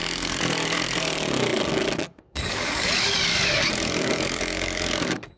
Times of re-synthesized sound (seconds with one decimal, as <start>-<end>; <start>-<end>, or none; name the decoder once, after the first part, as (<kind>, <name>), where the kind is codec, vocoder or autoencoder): 0.0-5.4 (codec, DAC)